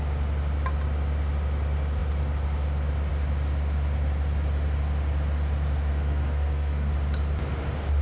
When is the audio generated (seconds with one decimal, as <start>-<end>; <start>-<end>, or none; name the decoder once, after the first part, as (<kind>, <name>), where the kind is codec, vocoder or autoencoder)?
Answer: 5.9-6.9 (codec, SNAC)